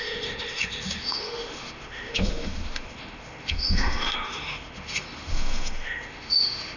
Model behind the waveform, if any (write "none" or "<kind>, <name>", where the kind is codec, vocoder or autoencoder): autoencoder, DAC-VAE